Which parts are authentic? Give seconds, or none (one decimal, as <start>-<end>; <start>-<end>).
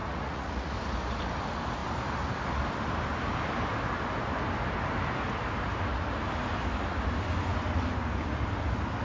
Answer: 0.7-9.0